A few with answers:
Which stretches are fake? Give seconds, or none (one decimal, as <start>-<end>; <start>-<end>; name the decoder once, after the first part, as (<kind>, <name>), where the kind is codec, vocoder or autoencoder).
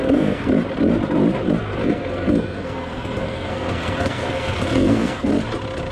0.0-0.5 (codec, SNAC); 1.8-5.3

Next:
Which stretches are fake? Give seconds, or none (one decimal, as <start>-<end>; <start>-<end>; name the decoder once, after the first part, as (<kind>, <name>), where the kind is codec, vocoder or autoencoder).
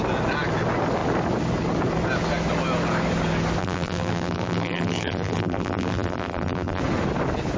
3.6-6.8 (vocoder, BigVGAN v2)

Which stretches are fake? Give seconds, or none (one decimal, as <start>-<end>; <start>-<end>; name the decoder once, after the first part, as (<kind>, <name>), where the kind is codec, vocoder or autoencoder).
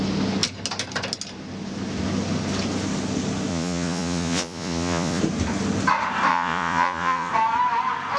3.5-5.2 (vocoder, Vocos); 6.3-7.3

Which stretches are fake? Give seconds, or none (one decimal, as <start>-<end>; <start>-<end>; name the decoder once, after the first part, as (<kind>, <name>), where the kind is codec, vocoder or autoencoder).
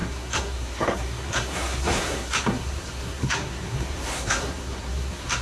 0.0-5.4 (codec, SNAC)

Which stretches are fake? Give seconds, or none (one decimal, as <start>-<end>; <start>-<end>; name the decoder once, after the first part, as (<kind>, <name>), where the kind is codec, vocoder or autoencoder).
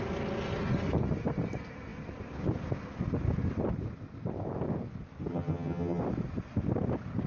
5.3-6.0 (vocoder, HiFi-GAN)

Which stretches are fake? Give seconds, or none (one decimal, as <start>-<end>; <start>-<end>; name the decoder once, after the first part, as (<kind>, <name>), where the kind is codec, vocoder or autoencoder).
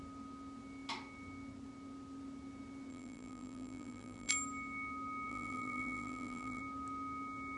2.9-4.3 (vocoder, BigVGAN v2); 5.3-6.6